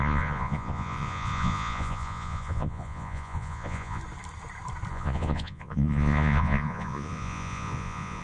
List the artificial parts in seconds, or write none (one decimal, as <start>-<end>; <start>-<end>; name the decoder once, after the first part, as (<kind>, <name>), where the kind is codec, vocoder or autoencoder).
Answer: 0.0-4.0 (vocoder, Vocos); 4.9-8.2